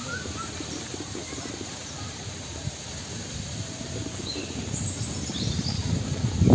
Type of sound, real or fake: fake